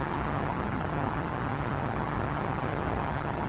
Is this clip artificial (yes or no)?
yes